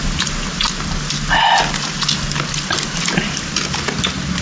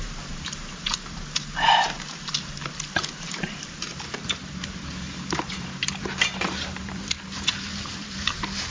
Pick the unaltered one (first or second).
first